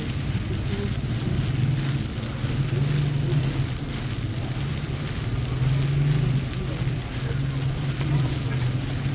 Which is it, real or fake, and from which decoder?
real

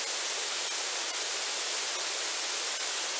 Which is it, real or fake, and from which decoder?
real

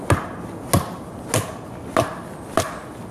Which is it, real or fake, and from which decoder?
real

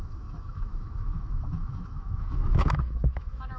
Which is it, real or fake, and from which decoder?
fake, autoencoder, DAC-VAE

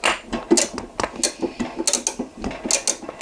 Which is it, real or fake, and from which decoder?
real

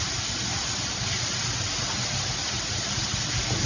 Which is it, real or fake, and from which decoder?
real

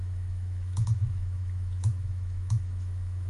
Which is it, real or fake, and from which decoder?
fake, autoencoder, DAC-VAE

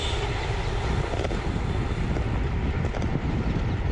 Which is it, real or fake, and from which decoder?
real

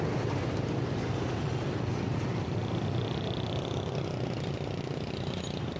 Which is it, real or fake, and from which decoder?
real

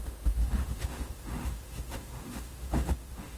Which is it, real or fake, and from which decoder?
fake, autoencoder, DAC-VAE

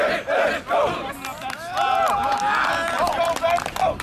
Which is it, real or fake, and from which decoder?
real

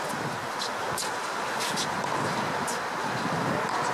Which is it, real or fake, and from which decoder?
real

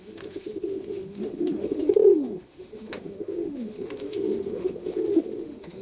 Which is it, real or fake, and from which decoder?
fake, autoencoder, DAC-VAE